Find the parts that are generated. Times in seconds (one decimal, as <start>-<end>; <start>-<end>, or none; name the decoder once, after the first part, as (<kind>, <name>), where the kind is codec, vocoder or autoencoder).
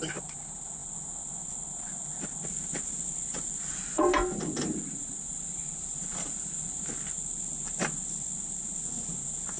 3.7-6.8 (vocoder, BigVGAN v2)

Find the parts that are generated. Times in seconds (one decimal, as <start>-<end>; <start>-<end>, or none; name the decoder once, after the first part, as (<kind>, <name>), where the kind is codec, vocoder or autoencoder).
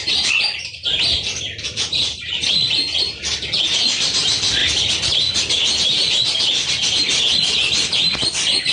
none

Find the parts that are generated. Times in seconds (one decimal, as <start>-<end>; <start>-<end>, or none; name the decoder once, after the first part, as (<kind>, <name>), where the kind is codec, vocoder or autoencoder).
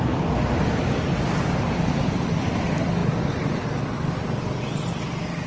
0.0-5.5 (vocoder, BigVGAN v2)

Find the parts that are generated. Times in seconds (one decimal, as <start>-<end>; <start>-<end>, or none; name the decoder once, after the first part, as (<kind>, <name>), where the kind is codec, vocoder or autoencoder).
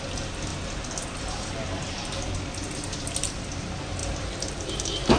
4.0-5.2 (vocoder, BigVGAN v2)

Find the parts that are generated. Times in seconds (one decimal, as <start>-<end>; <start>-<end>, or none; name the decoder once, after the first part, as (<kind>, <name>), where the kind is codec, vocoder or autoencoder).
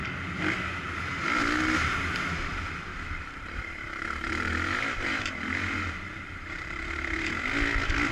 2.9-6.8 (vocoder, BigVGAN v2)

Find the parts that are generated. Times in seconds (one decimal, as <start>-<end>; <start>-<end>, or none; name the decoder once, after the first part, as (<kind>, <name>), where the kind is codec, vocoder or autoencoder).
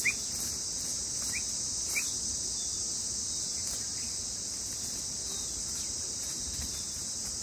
6.2-6.8 (vocoder, BigVGAN v2)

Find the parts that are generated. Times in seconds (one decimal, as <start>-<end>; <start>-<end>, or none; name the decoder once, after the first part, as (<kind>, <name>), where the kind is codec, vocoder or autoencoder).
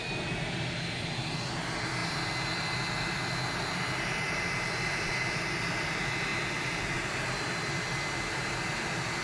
none